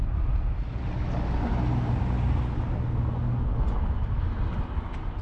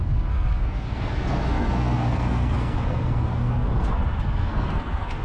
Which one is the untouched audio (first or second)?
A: first